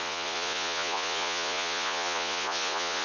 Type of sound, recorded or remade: remade